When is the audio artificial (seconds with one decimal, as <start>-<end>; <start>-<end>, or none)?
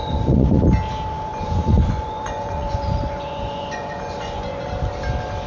0.0-0.6; 1.3-4.6